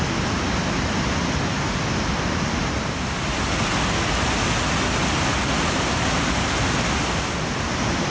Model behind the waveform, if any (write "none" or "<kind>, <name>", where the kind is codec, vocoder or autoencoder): none